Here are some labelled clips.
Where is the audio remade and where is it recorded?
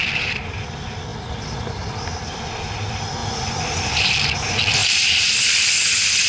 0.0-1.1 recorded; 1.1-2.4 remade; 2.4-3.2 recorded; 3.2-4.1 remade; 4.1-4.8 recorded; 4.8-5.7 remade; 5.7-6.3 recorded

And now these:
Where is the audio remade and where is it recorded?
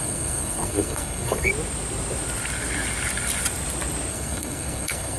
0.0-1.5 remade; 1.5-4.1 recorded; 4.1-5.2 remade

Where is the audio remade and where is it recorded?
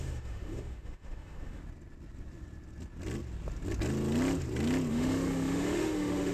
0.0-1.6 remade; 1.6-4.9 recorded; 4.9-6.3 remade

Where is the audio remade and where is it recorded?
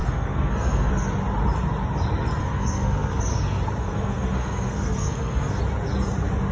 0.0-0.9 remade; 0.9-2.4 recorded; 2.4-3.2 remade; 3.2-3.8 recorded; 3.8-5.6 remade; 5.6-6.5 recorded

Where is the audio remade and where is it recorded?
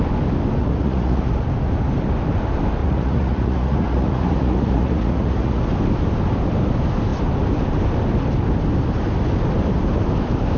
0.0-0.6 recorded; 0.6-1.3 remade; 1.3-2.8 recorded; 2.8-5.6 remade; 5.6-10.6 recorded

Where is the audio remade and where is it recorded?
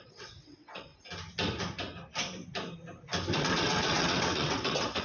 0.0-0.9 remade; 0.9-3.4 recorded; 3.4-5.0 remade